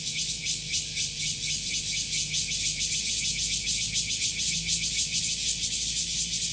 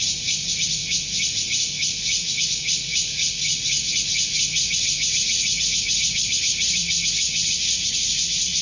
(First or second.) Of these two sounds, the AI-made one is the second